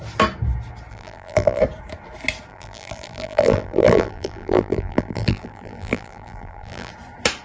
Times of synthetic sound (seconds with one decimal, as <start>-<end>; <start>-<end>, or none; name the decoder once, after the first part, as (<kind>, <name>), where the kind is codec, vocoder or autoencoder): 0.9-1.6 (vocoder, BigVGAN v2); 2.5-6.9